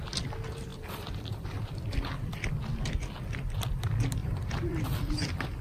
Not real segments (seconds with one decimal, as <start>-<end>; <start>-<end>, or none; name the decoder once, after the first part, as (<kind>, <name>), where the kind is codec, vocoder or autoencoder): 0.7-2.1 (vocoder, BigVGAN v2); 4.2-5.6